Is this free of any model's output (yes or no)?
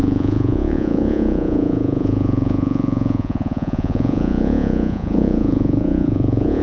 no